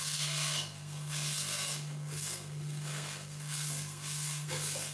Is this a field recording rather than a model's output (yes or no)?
no